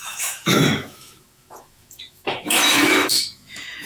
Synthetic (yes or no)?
yes